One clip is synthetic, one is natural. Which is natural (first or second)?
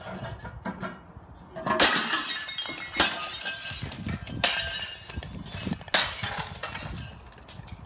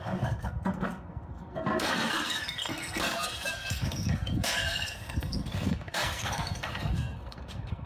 first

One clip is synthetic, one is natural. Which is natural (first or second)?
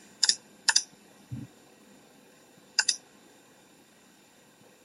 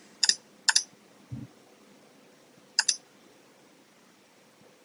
second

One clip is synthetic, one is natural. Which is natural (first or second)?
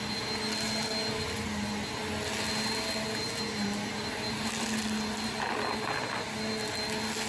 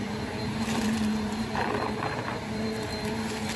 first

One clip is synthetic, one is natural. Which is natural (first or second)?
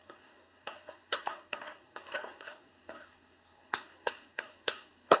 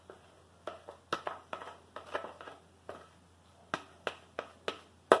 second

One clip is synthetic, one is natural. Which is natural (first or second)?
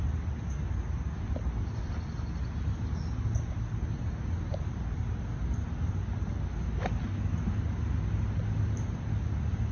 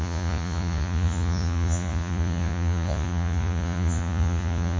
first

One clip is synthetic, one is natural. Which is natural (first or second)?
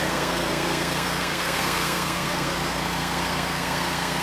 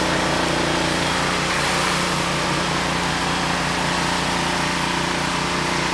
second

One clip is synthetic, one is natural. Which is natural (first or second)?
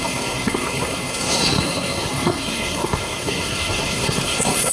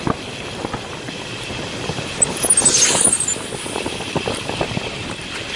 second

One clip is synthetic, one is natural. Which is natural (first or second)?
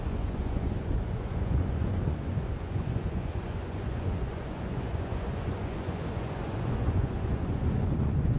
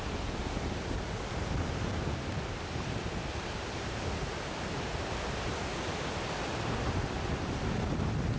second